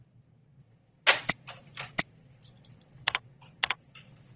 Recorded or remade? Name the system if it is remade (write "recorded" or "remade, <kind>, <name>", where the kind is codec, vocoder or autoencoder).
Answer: recorded